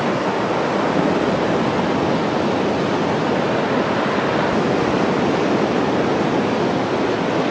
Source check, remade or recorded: recorded